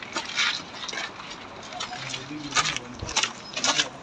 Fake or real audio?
real